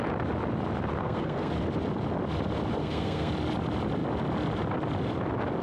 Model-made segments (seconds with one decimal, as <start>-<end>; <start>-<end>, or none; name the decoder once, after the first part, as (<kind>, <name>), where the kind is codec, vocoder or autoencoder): 1.0-1.5 (codec, SNAC); 2.8-3.3